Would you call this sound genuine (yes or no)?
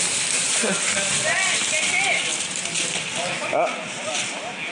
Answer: yes